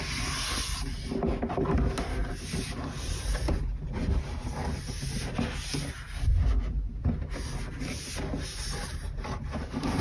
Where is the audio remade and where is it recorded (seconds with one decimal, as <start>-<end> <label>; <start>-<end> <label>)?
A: 0.0-2.2 recorded; 2.2-5.3 remade; 5.3-8.8 recorded; 8.8-10.0 remade